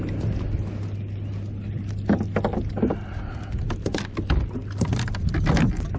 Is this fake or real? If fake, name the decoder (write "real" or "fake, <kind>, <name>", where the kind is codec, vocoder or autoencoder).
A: real